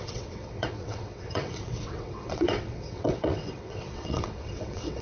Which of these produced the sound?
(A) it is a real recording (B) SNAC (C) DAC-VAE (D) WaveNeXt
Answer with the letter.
D